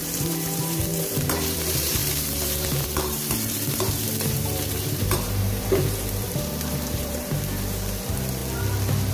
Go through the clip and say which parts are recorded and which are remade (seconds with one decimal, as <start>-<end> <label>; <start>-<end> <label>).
0.0-8.4 remade; 8.4-9.1 recorded